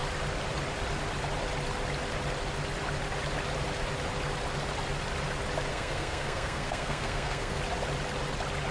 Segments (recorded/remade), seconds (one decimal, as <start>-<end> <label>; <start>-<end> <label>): 0.0-5.7 recorded; 5.7-7.6 remade; 7.6-8.7 recorded